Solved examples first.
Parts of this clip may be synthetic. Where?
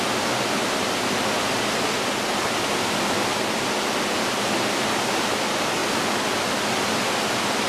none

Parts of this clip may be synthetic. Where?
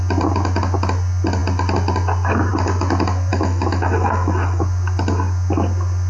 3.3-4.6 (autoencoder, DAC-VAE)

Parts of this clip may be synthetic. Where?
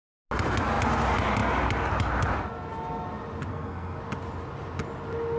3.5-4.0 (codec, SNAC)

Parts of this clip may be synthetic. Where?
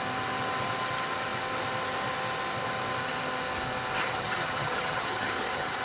4.0-5.8 (vocoder, HiFi-GAN)